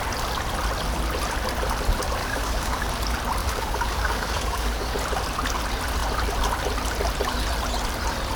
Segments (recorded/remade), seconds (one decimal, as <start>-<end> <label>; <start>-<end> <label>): 0.0-2.2 recorded; 2.2-2.9 remade; 2.9-3.4 recorded; 3.4-4.9 remade; 4.9-8.4 recorded